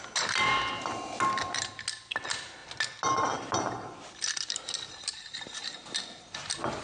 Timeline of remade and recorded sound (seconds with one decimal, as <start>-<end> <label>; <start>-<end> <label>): 0.0-6.8 recorded